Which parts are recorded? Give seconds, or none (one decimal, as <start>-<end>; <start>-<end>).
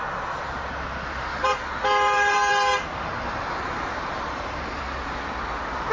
0.0-1.3; 4.8-5.9